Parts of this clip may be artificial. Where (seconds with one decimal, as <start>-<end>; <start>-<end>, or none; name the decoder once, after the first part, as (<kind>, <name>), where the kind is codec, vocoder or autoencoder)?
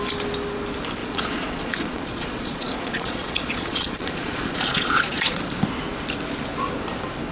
1.0-5.4 (vocoder, Vocos)